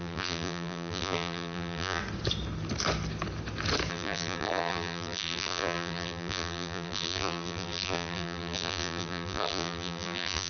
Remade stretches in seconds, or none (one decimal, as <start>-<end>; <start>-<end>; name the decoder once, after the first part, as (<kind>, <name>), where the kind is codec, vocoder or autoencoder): 0.0-2.0 (vocoder, BigVGAN v2); 3.9-10.5